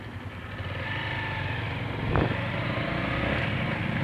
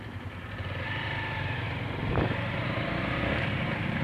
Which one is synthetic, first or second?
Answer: second